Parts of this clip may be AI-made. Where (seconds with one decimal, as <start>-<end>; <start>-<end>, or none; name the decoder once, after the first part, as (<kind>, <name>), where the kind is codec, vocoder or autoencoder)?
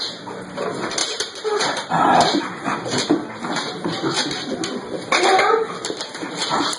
1.0-2.4 (vocoder, BigVGAN v2)